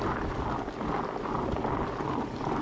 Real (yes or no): no